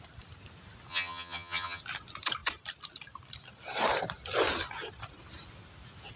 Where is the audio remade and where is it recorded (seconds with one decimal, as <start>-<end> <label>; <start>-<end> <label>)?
0.0-0.9 recorded; 0.9-1.8 remade; 1.8-6.2 recorded